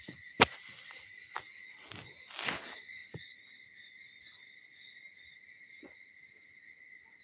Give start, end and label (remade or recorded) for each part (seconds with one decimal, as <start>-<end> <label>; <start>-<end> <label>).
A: 0.0-7.2 recorded